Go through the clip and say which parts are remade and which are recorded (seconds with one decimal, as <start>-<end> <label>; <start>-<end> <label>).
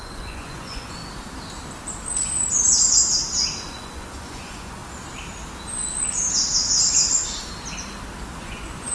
0.0-1.0 remade; 1.0-3.6 recorded; 3.6-4.8 remade; 4.8-8.4 recorded; 8.4-8.9 remade